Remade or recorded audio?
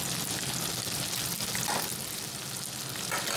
recorded